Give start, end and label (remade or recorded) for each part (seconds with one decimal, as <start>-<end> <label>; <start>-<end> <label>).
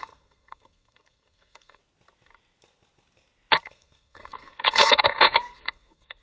0.0-1.8 remade; 1.8-3.6 recorded; 3.6-6.2 remade